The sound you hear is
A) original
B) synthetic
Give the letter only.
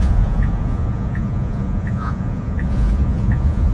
B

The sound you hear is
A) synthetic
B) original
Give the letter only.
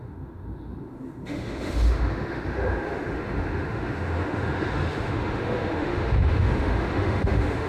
A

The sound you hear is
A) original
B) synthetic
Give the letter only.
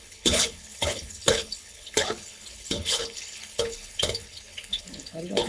B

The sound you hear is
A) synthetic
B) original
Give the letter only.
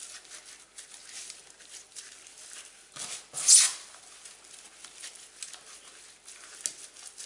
B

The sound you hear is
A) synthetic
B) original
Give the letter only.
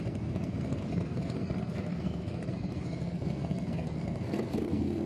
A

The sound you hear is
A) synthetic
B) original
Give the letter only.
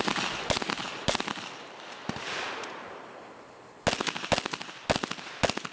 B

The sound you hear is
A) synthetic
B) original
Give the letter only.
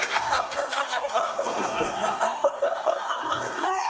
A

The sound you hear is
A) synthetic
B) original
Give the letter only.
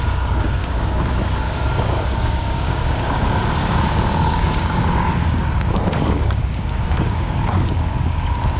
A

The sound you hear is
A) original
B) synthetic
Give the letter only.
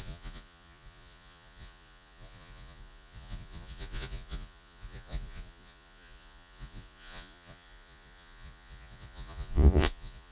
B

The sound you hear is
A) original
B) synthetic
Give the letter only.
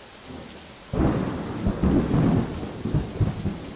A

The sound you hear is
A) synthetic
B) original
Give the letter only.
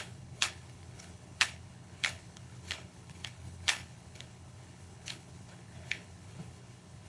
A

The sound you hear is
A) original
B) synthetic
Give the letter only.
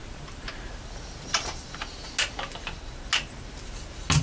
A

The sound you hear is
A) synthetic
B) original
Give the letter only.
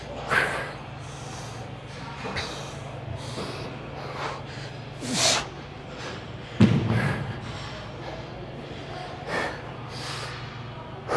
B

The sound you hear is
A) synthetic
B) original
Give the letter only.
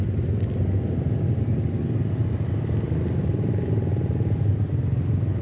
B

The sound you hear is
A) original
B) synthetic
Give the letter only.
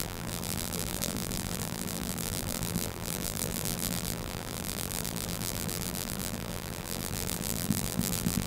B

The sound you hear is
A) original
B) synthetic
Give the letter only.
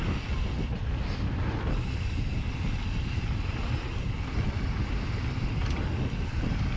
A